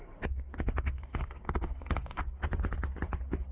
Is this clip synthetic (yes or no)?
no